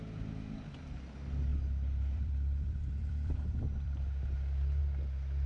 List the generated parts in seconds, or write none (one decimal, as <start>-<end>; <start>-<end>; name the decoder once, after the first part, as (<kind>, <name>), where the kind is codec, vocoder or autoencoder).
1.5-4.8 (vocoder, BigVGAN v2)